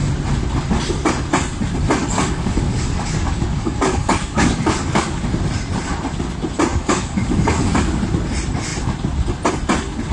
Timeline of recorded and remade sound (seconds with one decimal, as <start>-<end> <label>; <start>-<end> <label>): 0.0-2.0 recorded; 2.0-5.4 remade; 5.4-6.7 recorded; 6.7-7.9 remade; 7.9-10.1 recorded